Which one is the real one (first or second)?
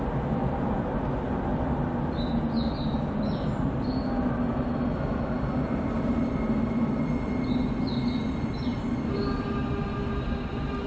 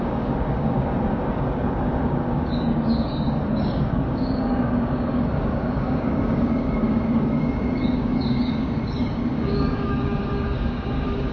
first